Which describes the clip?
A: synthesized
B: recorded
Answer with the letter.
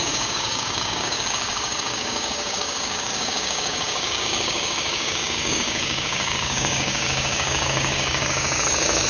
A